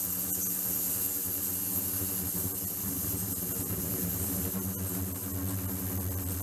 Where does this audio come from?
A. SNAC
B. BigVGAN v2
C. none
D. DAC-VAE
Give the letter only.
C